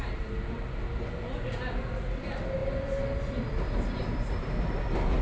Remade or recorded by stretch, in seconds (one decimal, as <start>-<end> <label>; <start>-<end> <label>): 0.0-5.2 recorded